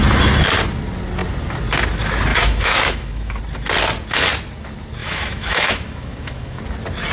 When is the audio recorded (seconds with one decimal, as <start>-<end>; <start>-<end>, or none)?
0.0-2.3; 3.4-5.0; 6.6-7.1